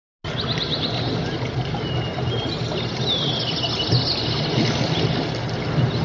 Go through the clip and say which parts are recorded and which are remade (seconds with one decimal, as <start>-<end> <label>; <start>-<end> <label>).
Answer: 0.0-6.0 recorded